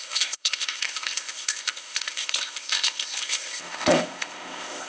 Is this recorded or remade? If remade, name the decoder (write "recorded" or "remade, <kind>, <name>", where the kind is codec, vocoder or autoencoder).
remade, codec, ZipCodec